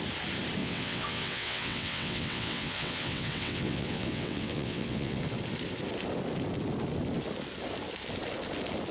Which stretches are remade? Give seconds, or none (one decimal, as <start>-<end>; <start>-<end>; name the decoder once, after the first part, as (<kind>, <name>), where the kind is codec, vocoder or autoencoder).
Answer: 0.6-5.2 (vocoder, WaveNeXt)